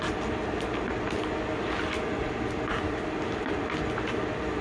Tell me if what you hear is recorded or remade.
recorded